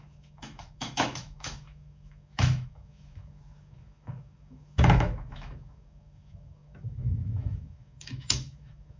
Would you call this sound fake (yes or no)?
yes